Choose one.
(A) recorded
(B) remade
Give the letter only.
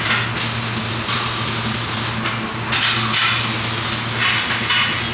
A